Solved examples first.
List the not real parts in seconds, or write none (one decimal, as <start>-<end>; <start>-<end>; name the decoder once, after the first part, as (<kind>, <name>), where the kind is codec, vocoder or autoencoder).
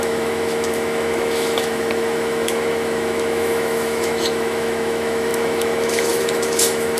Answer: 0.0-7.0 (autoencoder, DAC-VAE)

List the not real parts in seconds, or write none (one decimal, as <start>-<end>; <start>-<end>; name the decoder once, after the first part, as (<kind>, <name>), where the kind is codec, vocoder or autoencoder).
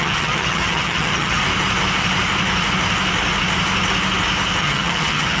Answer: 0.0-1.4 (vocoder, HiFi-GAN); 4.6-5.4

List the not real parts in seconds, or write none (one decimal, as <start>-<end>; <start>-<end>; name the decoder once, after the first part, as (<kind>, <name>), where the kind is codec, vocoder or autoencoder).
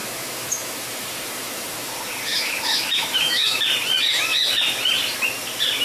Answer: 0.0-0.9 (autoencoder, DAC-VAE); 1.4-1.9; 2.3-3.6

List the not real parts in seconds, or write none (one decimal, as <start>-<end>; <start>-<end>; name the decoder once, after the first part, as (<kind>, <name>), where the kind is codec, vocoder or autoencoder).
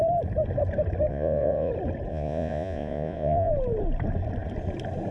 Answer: 1.1-1.7 (vocoder, Vocos); 2.1-3.5